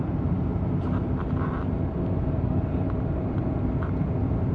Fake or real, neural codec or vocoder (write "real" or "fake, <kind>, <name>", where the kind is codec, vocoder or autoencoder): real